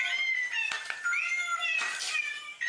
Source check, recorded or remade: recorded